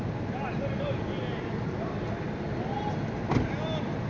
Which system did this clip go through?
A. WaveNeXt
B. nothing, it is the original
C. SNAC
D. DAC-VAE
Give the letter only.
B